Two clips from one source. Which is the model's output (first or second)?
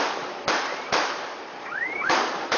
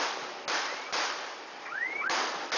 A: first